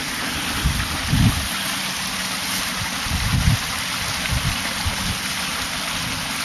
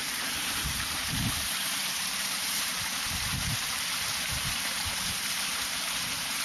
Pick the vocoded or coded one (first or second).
second